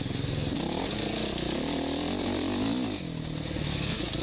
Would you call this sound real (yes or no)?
yes